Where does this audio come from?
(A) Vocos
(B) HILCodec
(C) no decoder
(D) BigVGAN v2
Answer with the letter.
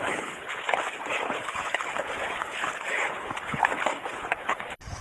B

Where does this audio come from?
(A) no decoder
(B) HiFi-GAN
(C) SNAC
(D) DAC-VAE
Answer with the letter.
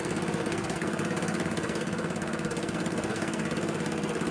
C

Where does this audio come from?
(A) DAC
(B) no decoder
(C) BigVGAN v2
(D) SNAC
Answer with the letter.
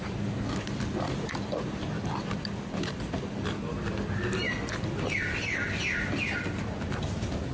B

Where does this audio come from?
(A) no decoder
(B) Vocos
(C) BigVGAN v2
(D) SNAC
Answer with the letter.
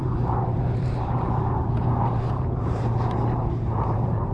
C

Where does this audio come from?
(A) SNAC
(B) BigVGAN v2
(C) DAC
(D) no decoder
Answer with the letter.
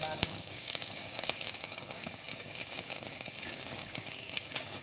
C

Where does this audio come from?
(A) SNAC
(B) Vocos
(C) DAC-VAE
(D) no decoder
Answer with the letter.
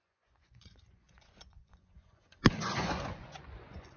B